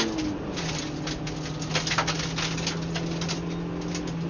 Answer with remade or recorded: recorded